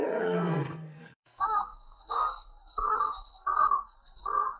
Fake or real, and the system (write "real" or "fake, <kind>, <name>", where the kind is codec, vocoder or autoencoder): fake, codec, SNAC